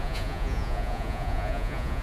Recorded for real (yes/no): no